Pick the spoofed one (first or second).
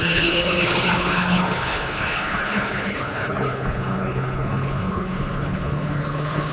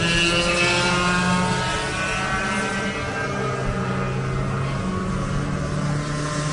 first